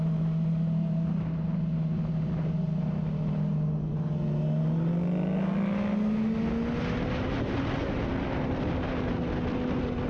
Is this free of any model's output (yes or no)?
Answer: yes